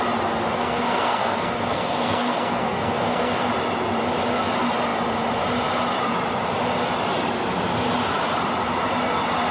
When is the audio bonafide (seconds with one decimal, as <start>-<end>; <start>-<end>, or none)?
0.0-0.6; 3.5-9.5